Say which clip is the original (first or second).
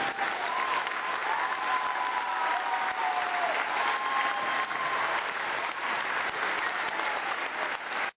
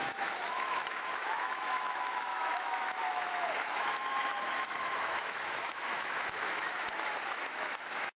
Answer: first